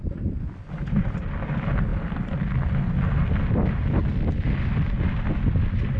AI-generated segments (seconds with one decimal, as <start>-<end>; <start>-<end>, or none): none